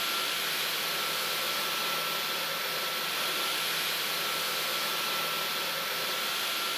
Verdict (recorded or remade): recorded